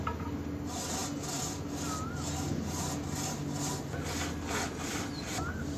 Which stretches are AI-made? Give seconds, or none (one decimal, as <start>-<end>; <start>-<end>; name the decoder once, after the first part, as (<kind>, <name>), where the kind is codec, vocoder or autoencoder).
none